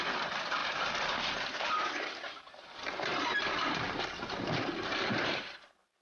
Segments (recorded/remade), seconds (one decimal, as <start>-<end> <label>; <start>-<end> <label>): 0.0-3.3 remade; 3.3-4.5 recorded; 4.5-6.0 remade